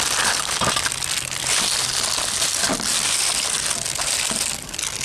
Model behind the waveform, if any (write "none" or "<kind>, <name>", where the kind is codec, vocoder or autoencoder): none